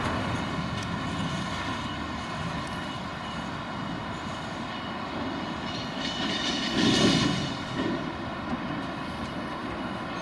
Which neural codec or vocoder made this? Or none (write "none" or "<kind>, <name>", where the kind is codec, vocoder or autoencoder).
none